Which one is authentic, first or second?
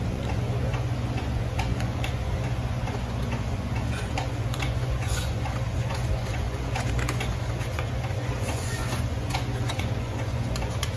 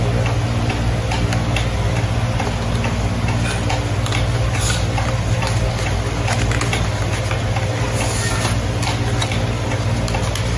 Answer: second